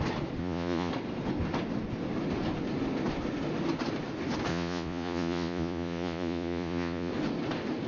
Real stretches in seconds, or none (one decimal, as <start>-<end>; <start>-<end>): 0.0-0.4; 0.9-4.5; 7.1-7.9